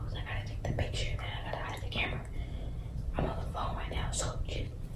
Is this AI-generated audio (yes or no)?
no